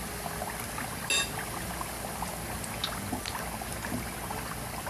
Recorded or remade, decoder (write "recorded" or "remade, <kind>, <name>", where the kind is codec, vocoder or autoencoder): recorded